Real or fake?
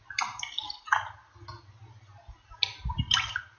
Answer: real